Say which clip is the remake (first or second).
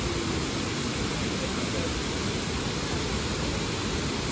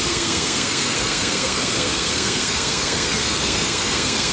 second